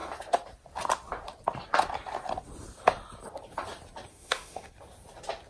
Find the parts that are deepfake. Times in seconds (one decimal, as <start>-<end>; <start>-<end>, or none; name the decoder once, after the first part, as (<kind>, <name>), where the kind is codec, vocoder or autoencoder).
4.1-4.7 (autoencoder, DAC-VAE)